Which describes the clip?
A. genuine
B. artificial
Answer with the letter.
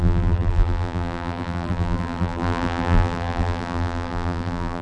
B